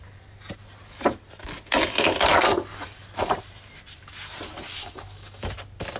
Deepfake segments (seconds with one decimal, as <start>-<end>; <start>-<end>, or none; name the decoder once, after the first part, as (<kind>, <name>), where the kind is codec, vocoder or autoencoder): 2.3-3.3 (codec, DAC); 4.7-5.5